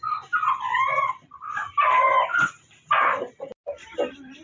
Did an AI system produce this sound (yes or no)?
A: no